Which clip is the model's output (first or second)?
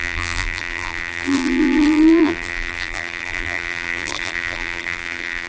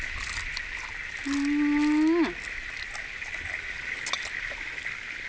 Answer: first